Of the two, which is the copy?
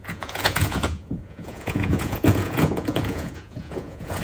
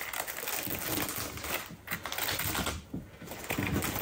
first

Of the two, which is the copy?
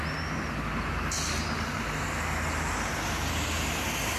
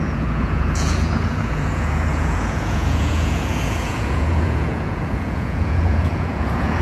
second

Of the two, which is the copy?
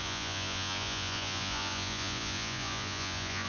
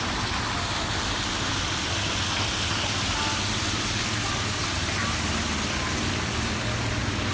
first